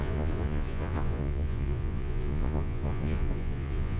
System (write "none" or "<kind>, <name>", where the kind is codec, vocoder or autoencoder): vocoder, Vocos